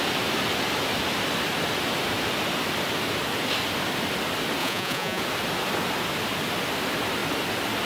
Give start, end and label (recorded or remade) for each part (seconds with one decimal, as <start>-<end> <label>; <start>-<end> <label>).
0.0-4.6 recorded; 4.6-5.2 remade; 5.2-7.9 recorded